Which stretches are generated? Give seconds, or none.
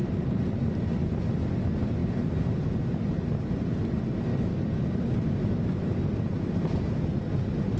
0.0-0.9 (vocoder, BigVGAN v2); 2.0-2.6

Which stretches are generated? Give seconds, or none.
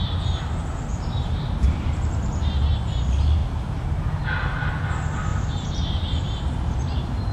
0.9-2.0 (vocoder, BigVGAN v2); 3.4-4.7; 5.3-7.3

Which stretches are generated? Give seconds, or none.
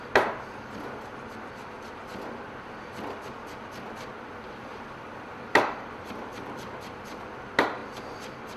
4.7-6.7 (vocoder, BigVGAN v2)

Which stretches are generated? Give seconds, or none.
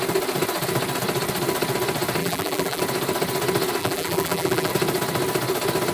2.2-2.8 (vocoder, BigVGAN v2); 3.8-4.7